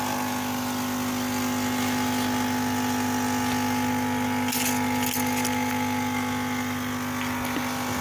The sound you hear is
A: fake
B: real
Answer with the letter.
B